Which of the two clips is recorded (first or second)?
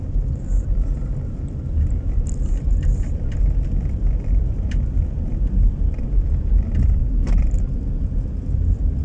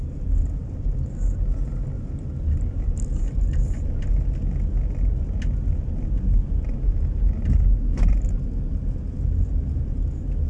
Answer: second